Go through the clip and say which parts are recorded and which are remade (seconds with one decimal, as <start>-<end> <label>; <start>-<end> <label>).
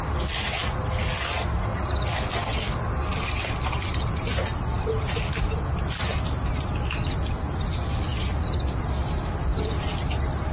0.0-1.7 recorded; 1.7-6.5 remade; 6.5-8.1 recorded; 8.1-9.8 remade; 9.8-10.5 recorded